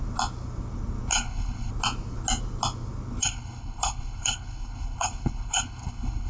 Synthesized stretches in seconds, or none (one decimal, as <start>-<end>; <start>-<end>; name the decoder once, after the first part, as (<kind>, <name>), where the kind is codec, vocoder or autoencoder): 1.1-1.7 (codec, HILCodec); 3.2-6.3